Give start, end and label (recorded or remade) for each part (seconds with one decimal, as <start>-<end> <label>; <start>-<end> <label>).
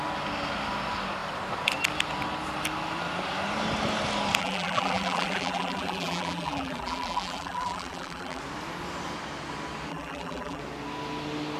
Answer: 0.0-4.4 recorded; 4.4-8.4 remade; 8.4-9.9 recorded; 9.9-10.6 remade; 10.6-11.6 recorded